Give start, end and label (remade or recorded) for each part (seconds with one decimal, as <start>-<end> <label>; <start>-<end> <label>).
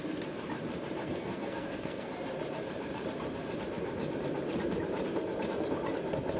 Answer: 0.0-1.0 recorded; 1.0-2.1 remade; 2.1-6.4 recorded